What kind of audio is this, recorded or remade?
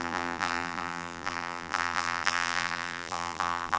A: remade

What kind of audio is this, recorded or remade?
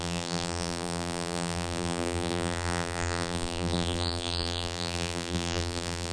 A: remade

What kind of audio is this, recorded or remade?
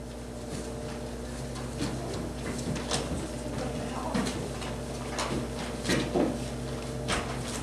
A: recorded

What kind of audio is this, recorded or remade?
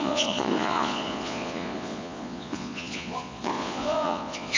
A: remade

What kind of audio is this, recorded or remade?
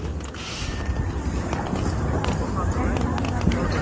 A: recorded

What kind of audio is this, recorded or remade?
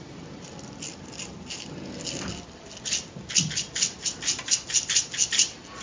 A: recorded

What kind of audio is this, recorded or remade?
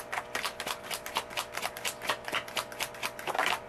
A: recorded